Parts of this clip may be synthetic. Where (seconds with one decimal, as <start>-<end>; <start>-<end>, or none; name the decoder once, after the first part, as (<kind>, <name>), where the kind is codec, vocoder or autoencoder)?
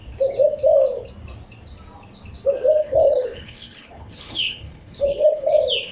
2.8-5.5 (codec, HILCodec)